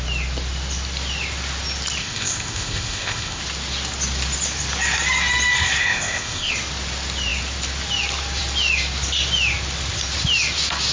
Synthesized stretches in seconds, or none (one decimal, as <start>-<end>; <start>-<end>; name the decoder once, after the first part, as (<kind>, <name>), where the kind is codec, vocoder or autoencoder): 2.0-3.4 (codec, ZipCodec); 5.8-6.5